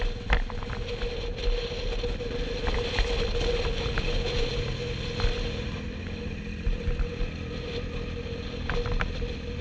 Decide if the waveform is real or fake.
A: real